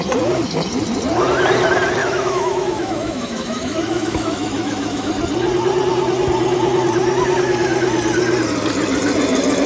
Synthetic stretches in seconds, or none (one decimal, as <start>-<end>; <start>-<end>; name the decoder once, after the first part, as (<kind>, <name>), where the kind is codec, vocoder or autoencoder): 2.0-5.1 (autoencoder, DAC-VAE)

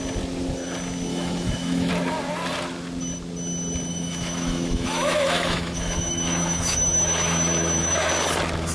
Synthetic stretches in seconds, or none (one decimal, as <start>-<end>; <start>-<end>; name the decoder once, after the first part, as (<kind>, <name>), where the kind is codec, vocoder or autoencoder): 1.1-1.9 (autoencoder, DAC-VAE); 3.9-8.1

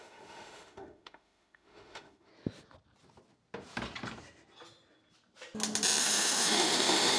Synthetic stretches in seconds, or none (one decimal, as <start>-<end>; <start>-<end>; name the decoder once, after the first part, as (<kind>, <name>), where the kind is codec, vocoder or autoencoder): 0.0-2.3 (autoencoder, DAC-VAE); 6.0-7.2

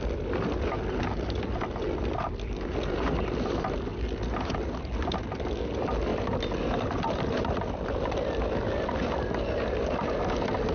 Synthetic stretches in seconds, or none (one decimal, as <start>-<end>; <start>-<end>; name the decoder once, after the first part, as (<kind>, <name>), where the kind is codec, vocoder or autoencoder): none

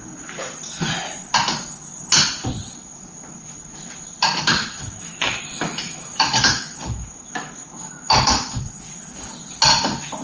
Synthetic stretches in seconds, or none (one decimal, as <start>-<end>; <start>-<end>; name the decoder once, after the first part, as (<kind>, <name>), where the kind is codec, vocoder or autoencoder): 4.6-8.6 (autoencoder, DAC-VAE)

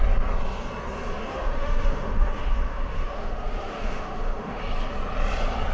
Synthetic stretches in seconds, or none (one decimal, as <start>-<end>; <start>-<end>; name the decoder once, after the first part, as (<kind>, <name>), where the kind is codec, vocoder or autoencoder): 1.2-4.6 (autoencoder, DAC-VAE)